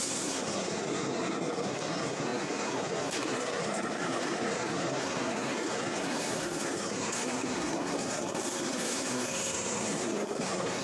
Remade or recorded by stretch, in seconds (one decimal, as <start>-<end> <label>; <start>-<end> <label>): 0.0-10.8 remade